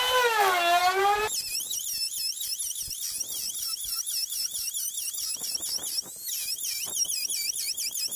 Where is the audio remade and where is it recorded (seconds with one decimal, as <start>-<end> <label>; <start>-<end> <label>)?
0.0-8.2 recorded